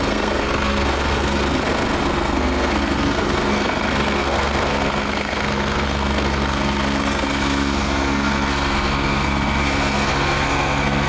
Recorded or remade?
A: remade